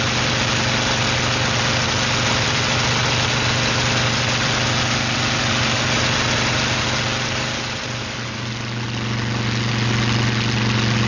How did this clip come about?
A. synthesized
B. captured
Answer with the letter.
B